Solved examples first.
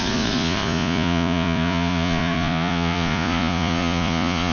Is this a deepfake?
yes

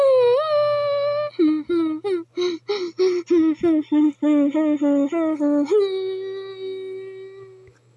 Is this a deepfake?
no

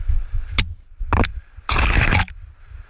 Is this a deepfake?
no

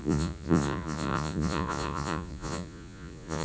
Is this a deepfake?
yes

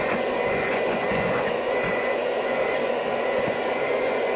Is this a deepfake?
yes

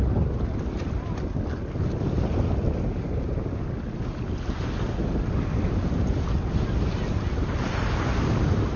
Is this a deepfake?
no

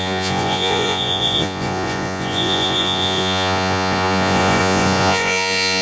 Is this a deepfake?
yes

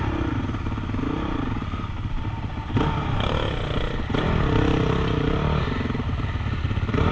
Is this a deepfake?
no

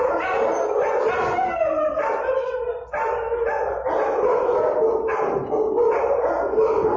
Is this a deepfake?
no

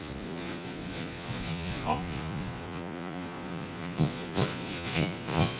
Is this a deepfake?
yes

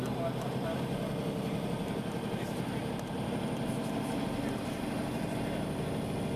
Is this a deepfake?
no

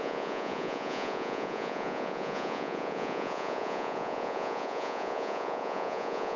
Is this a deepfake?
yes